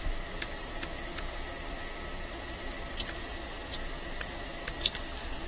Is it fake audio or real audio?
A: real